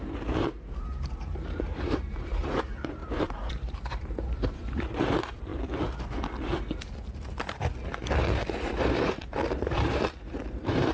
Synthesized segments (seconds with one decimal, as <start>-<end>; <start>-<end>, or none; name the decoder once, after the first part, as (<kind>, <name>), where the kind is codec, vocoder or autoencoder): 0.0-5.5 (vocoder, BigVGAN v2); 8.6-10.9